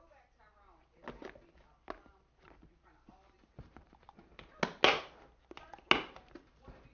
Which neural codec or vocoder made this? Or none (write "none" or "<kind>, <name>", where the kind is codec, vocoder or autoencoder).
none